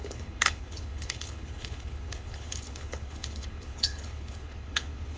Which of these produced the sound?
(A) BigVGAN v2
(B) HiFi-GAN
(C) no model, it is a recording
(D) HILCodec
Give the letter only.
D